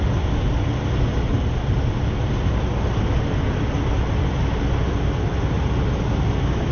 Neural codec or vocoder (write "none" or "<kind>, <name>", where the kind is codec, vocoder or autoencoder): none